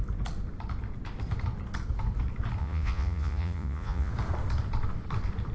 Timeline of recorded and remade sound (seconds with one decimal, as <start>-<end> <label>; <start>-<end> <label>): 0.0-2.6 recorded; 2.6-4.1 remade; 4.1-5.5 recorded